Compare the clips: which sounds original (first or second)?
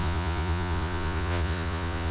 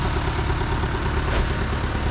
second